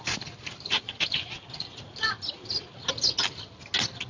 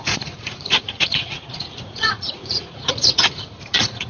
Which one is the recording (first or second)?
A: first